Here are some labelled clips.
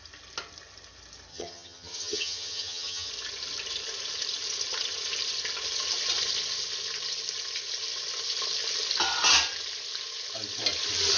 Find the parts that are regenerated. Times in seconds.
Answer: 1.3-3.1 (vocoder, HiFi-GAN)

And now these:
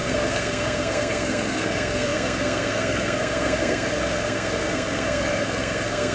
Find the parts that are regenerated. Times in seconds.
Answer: 0.0-6.1 (codec, SNAC)

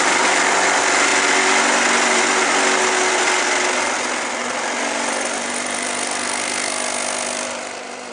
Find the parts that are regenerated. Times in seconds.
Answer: 0.0-1.1 (vocoder, BigVGAN v2); 4.3-8.1

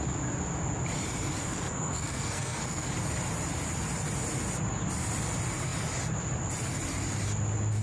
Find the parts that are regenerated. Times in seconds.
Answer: 1.4-2.9 (codec, SNAC)

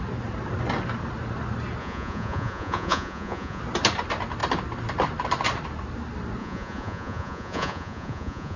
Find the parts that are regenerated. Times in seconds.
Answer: 1.8-3.6 (vocoder, Vocos); 6.4-8.6